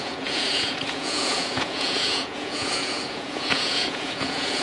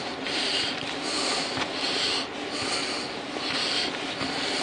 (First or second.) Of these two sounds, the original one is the second